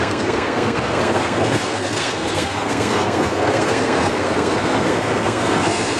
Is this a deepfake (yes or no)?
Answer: yes